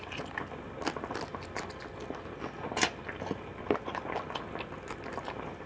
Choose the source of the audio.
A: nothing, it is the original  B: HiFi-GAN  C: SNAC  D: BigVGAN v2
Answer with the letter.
A